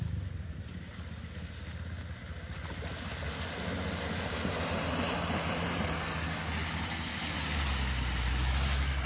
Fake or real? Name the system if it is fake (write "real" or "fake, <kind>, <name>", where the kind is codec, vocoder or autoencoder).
real